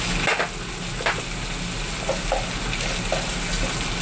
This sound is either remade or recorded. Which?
recorded